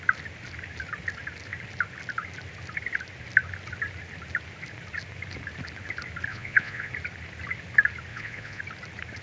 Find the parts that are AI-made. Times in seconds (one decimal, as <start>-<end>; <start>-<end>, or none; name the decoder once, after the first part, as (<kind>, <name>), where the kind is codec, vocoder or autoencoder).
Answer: 6.3-6.9 (vocoder, Vocos); 8.1-8.6